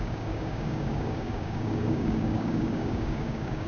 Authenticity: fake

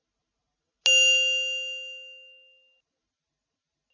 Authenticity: real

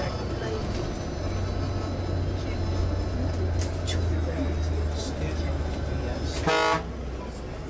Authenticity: real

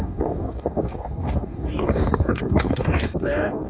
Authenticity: fake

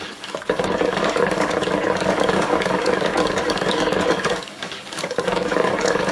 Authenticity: fake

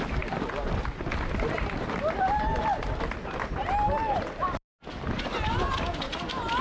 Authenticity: real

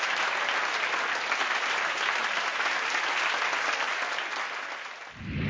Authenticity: real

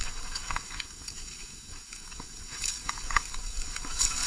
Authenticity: fake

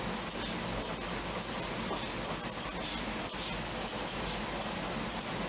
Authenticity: real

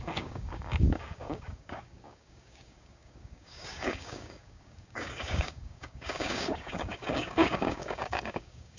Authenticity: fake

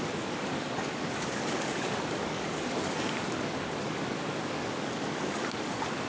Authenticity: fake